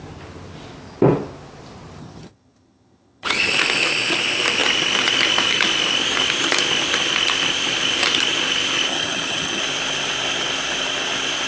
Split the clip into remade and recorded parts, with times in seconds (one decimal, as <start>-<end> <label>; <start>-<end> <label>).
0.0-2.0 recorded; 2.0-3.5 remade; 3.5-8.9 recorded; 8.9-9.6 remade; 9.6-11.5 recorded